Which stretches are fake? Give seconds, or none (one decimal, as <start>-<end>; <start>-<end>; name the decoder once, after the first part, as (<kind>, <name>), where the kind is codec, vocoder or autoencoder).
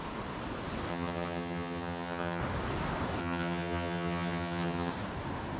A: 0.9-2.4 (vocoder, HiFi-GAN); 3.2-4.9